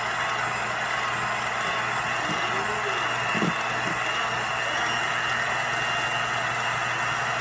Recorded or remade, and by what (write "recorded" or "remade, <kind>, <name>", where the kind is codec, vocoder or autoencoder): recorded